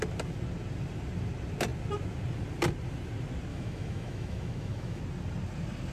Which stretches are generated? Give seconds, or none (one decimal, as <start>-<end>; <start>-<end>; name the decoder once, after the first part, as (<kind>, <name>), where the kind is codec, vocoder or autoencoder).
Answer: 3.5-5.0 (autoencoder, DAC-VAE)